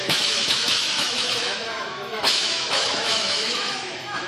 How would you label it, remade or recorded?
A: remade